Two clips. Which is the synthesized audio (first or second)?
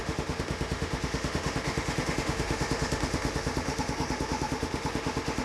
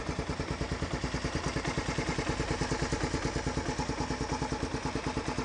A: first